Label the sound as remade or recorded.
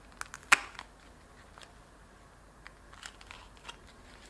recorded